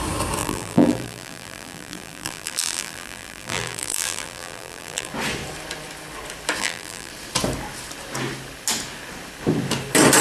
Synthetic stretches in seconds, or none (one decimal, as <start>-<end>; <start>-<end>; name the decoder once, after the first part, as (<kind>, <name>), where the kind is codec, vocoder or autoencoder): 0.4-5.1 (vocoder, BigVGAN v2); 6.6-7.1